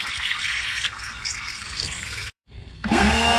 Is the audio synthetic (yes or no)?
yes